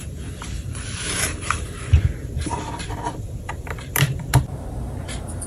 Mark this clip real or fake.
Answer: fake